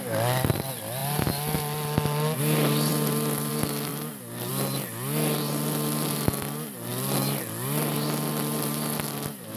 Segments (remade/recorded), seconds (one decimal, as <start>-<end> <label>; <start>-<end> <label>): 0.0-9.6 recorded